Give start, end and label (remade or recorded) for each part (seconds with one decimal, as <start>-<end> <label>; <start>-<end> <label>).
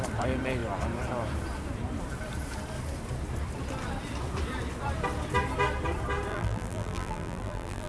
0.0-6.3 recorded; 6.3-7.9 remade